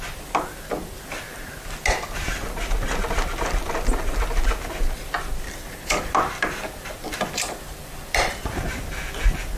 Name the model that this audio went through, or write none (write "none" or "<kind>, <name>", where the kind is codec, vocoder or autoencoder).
none